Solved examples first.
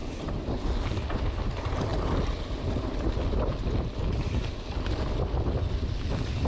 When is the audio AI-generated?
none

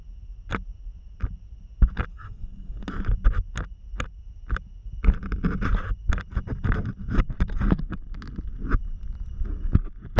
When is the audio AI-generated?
2.1-2.8 (codec, SNAC)

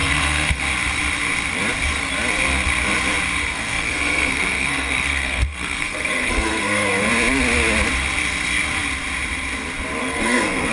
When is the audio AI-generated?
0.0-0.6 (codec, SNAC); 3.4-7.1; 10.0-10.7

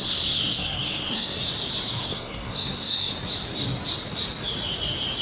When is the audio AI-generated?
0.0-1.4 (codec, SNAC); 2.0-3.1

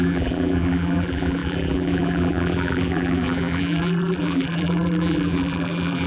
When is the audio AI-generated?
0.0-6.1 (vocoder, BigVGAN v2)